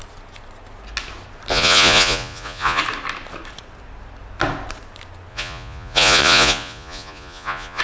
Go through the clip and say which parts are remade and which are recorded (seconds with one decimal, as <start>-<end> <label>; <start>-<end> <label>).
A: 0.0-1.5 recorded; 1.5-2.8 remade; 2.8-5.3 recorded; 5.3-7.8 remade